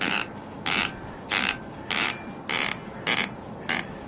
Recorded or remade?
recorded